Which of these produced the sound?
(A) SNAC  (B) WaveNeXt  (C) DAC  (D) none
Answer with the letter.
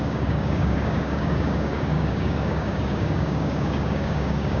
C